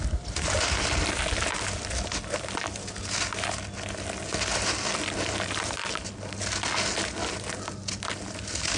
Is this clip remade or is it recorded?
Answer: recorded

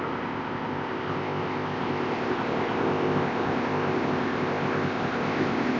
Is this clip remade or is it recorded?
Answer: remade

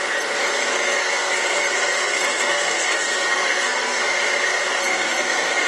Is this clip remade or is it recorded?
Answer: remade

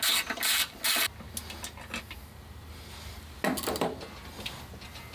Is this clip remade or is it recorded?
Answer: recorded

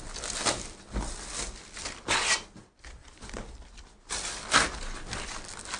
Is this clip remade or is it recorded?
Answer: recorded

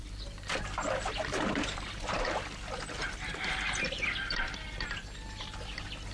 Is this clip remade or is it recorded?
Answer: recorded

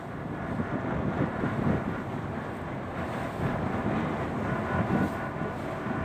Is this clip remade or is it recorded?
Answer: recorded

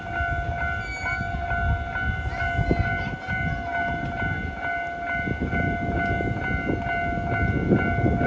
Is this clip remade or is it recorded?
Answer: recorded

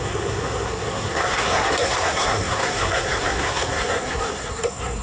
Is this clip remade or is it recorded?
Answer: remade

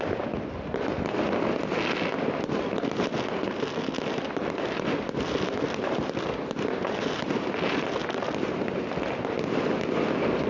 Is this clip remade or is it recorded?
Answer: recorded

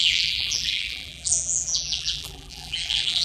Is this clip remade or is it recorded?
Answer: remade